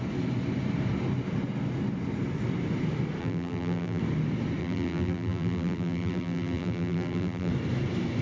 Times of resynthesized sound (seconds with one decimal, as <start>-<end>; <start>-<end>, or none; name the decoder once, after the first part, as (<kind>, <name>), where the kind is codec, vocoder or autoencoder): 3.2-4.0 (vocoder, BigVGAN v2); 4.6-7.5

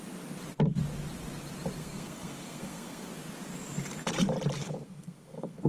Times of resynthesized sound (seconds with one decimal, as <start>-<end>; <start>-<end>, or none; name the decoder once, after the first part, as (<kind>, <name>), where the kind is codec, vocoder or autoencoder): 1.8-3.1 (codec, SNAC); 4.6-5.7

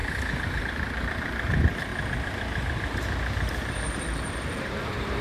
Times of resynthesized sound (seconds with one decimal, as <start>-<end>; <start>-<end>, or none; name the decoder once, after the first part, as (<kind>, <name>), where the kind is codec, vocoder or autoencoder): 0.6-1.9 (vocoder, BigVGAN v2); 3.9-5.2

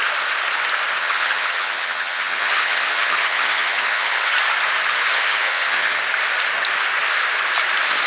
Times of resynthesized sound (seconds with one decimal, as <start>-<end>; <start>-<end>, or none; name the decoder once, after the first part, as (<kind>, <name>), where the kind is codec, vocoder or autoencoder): 1.0-4.3 (vocoder, HiFi-GAN); 5.1-6.0